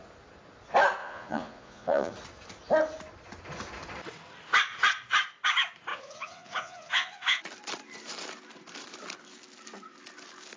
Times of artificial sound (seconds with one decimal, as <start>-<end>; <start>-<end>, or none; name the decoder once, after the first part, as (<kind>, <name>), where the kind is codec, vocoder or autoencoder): 1.0-2.1 (vocoder, Vocos); 5.9-7.4